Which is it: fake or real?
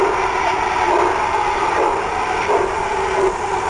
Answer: real